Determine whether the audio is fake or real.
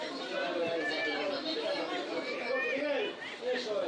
real